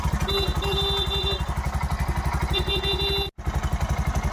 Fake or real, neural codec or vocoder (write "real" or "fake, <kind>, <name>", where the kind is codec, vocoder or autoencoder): real